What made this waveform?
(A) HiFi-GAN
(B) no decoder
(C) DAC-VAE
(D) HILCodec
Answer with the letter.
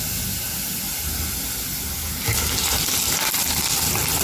B